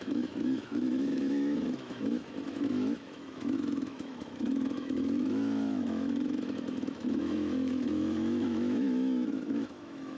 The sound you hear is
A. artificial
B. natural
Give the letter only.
A